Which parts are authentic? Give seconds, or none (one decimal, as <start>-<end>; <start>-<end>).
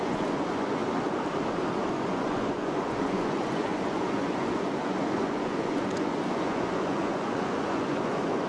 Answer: 0.8-1.9